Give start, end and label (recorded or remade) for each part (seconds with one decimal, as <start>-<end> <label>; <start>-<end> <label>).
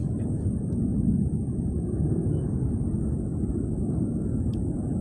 0.0-5.0 remade